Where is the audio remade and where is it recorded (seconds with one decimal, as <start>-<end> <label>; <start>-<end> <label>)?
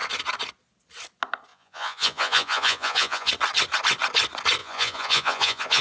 0.0-1.5 recorded; 1.5-3.3 remade; 3.3-4.6 recorded; 4.6-5.8 remade